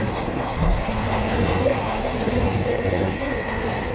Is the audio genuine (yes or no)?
no